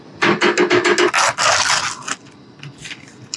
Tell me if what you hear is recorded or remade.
recorded